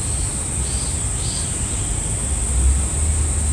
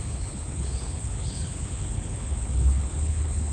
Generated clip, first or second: second